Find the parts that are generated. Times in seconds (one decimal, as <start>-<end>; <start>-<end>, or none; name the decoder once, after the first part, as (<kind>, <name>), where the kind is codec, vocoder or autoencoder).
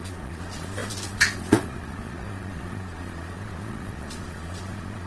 0.0-5.1 (vocoder, Vocos)